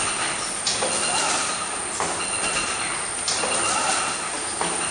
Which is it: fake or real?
real